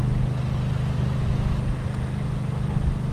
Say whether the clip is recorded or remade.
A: recorded